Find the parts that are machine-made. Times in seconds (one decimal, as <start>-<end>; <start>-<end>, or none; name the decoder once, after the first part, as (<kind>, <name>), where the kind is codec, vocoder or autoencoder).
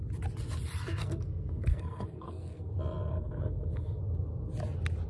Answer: 1.0-2.7 (codec, SNAC); 3.1-4.0